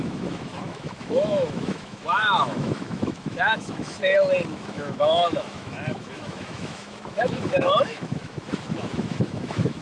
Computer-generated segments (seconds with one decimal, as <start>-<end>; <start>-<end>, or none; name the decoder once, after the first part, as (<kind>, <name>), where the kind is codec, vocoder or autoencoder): 0.0-4.0 (autoencoder, DAC-VAE); 4.5-9.8